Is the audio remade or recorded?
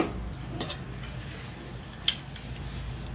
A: recorded